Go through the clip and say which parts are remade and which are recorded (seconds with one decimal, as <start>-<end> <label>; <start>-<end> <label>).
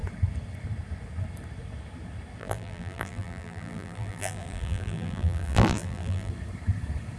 0.0-2.4 recorded; 2.4-6.3 remade; 6.3-7.2 recorded